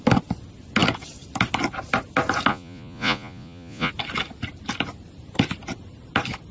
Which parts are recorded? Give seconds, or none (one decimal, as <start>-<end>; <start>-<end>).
0.0-2.5; 3.9-6.5